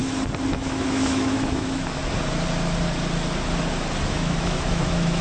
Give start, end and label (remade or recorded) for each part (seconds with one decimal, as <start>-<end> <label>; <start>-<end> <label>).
0.0-0.5 recorded; 0.5-2.0 remade; 2.0-4.1 recorded; 4.1-5.2 remade